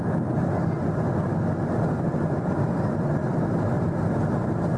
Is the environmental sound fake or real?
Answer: real